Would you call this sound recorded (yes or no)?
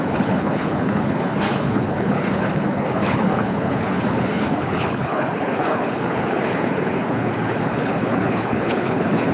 no